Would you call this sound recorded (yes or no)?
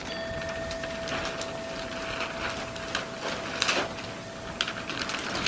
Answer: yes